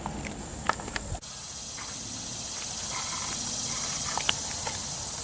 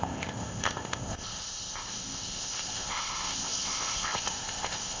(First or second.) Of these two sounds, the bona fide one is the first